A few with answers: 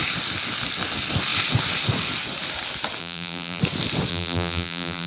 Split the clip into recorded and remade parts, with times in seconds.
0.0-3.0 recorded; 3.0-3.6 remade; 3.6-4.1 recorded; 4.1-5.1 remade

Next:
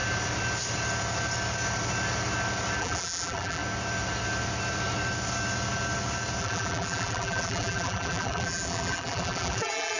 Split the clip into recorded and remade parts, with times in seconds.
0.0-2.8 recorded; 2.8-3.6 remade; 3.6-6.4 recorded; 6.4-10.0 remade

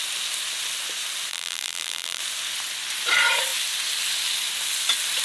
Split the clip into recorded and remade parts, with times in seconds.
0.0-1.3 recorded; 1.3-2.2 remade; 2.2-5.2 recorded

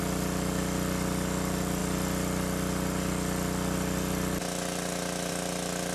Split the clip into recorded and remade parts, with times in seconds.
0.0-5.9 recorded